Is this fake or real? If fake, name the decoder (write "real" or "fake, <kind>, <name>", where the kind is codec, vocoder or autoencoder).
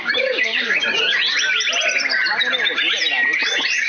real